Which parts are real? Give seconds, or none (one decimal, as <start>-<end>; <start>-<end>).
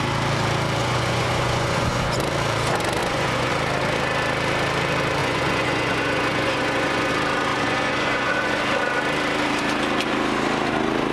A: 0.0-0.8; 2.2-3.0; 3.5-5.2; 7.1-7.5; 8.6-11.1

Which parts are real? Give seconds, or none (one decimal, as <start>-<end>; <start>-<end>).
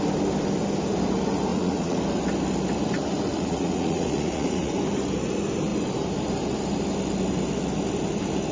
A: 0.0-1.5; 2.0-3.3; 4.7-8.5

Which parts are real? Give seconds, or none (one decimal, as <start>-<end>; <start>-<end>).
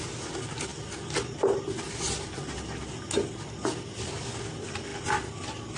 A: 0.0-5.8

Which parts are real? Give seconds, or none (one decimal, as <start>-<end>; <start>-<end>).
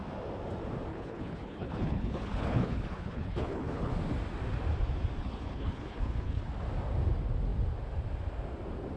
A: 0.0-0.9; 3.9-5.2; 6.4-9.0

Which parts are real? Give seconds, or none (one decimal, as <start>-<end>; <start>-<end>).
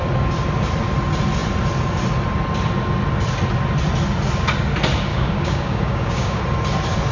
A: 0.0-5.1; 6.4-7.1